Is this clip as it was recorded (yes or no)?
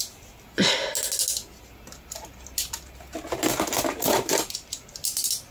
yes